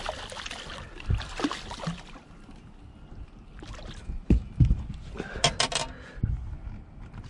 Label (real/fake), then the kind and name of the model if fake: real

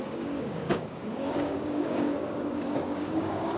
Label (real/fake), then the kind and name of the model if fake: fake, codec, DAC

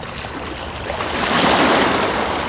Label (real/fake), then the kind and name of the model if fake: real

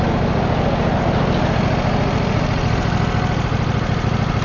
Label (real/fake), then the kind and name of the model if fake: real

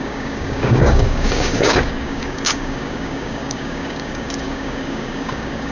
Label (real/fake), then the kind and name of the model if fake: fake, codec, DAC